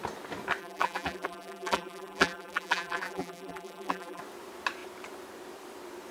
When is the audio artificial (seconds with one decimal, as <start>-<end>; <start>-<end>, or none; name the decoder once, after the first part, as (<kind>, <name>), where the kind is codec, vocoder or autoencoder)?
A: 0.6-4.2 (vocoder, BigVGAN v2)